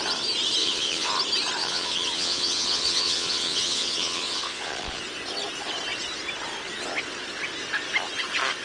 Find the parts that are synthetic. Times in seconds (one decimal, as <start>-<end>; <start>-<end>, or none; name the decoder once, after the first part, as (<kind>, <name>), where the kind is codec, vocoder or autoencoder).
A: 0.6-1.1 (vocoder, Vocos); 1.6-5.0

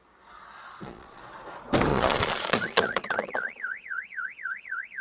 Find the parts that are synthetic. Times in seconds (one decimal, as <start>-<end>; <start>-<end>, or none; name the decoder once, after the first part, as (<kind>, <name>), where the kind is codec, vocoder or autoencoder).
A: 0.4-1.2 (vocoder, Vocos); 1.9-5.0

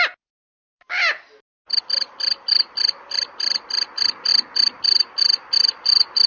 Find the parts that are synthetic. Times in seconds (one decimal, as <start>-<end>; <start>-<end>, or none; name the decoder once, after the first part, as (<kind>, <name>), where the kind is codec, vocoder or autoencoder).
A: none

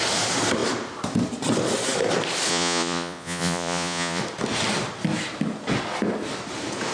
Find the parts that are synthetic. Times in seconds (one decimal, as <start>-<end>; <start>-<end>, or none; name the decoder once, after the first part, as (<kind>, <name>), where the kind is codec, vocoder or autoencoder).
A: 2.5-4.2 (vocoder, Vocos)

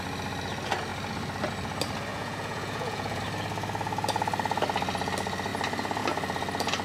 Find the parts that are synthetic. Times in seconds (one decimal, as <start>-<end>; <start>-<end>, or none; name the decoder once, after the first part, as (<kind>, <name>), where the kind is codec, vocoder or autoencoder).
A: 2.1-3.2 (vocoder, Vocos)

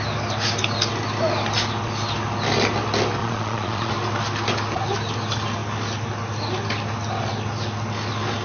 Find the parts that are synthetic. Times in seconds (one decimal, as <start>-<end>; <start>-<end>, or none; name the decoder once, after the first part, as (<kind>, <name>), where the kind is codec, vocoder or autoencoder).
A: 3.2-3.9 (vocoder, Vocos)

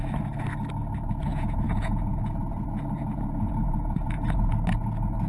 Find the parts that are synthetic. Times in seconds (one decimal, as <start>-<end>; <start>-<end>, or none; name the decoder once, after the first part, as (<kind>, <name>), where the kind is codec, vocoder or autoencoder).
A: 1.3-4.5 (vocoder, Vocos)